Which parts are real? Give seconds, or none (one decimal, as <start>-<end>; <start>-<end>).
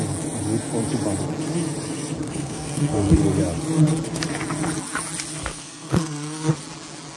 0.0-2.3; 3.2-5.3; 6.5-7.2